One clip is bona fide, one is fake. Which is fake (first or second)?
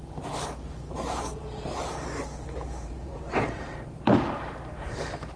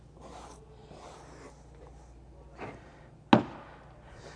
first